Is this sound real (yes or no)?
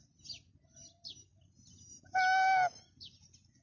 yes